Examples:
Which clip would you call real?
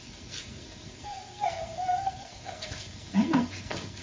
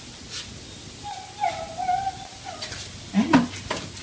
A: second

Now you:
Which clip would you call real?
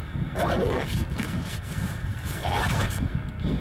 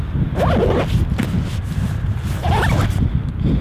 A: second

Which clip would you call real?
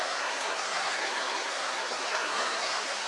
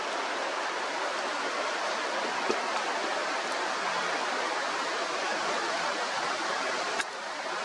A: second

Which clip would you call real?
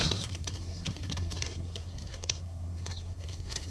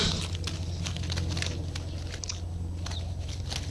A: second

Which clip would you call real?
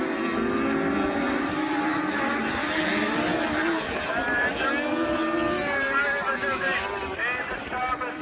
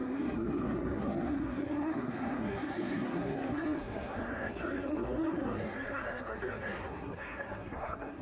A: first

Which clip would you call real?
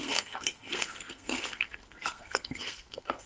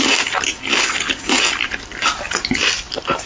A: second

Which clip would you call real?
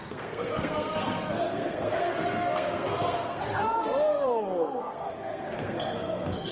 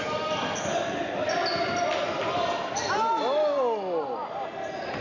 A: second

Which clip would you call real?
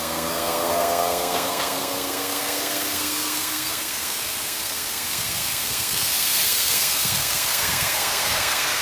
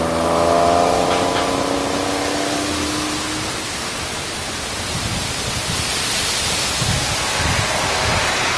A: second